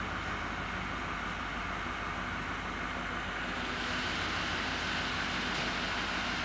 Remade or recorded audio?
recorded